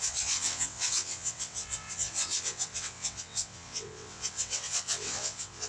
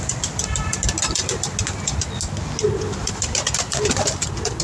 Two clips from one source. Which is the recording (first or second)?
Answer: second